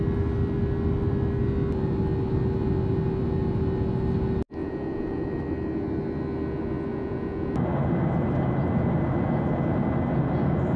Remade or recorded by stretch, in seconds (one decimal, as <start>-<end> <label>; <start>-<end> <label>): 0.0-4.6 recorded; 4.6-5.4 remade; 5.4-6.9 recorded; 6.9-7.5 remade; 7.5-10.8 recorded